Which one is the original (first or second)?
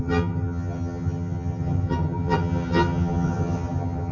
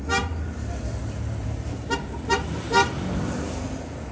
second